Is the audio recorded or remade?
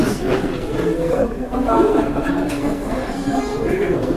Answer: remade